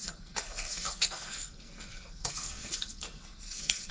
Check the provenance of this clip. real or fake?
fake